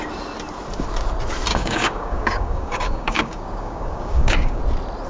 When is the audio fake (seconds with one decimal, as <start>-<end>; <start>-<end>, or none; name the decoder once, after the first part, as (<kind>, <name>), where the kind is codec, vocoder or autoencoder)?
1.5-4.6 (codec, DAC)